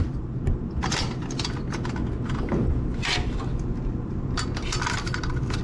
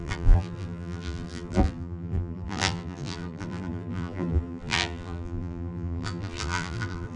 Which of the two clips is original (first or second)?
first